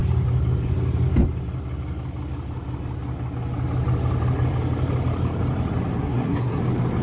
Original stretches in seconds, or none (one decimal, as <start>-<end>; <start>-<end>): 0.0-6.0; 6.6-7.0